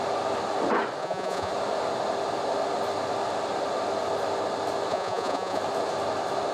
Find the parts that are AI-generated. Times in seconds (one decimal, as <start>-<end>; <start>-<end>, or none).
1.0-1.5; 4.9-5.6